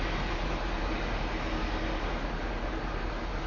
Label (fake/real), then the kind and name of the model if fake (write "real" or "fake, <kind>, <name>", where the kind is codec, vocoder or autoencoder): real